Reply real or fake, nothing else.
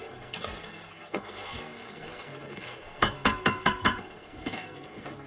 fake